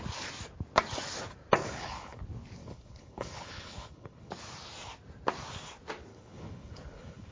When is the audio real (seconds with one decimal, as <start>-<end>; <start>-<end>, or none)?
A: 0.0-1.6; 2.2-2.6; 4.3-6.1